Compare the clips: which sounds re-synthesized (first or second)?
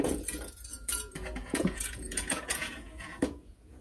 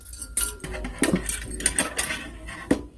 first